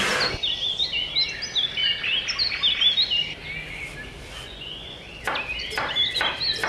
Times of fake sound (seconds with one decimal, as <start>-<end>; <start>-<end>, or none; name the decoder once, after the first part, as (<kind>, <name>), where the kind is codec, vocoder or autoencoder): 4.4-5.1 (vocoder, Vocos)